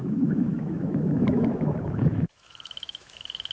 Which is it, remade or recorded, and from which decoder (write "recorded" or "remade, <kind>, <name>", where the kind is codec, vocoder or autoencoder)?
remade, autoencoder, DAC-VAE